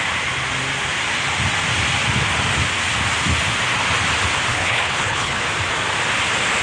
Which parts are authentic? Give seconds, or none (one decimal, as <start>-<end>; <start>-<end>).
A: 0.0-4.5; 5.4-6.6